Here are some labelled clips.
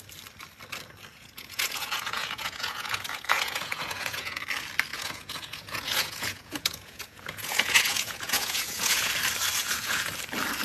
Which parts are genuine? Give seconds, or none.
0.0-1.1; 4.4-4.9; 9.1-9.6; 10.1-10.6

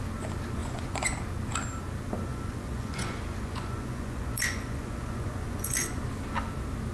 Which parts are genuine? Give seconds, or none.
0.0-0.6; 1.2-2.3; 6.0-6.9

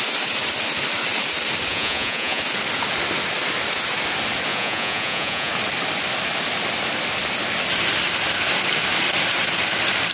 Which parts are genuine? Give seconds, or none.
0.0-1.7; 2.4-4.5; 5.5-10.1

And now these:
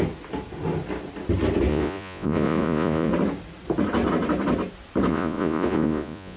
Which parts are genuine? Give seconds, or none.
0.0-1.7; 3.1-5.1

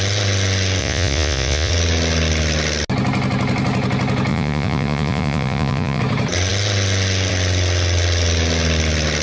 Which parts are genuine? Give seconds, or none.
0.0-0.8; 1.7-4.3; 6.0-9.2